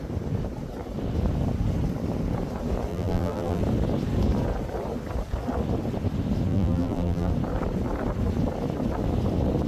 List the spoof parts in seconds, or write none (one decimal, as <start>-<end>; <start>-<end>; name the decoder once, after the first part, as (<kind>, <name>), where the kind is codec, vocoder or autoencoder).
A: 2.9-3.6 (vocoder, BigVGAN v2); 6.5-7.3